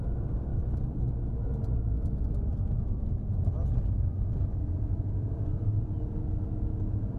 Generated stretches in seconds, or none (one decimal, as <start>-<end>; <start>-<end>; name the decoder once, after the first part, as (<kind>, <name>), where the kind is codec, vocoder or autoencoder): 0.5-1.1 (vocoder, BigVGAN v2); 2.5-6.5